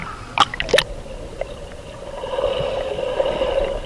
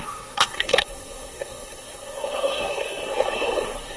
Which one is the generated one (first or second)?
second